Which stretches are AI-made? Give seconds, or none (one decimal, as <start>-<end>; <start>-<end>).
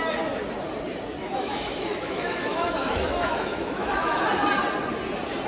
1.2-4.2